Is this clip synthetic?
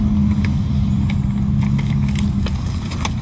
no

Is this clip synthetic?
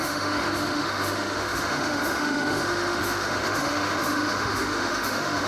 yes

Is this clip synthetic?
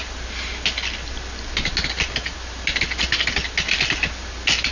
no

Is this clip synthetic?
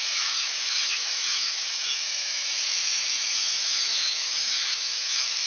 yes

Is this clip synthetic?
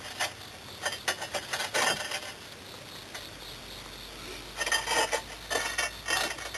no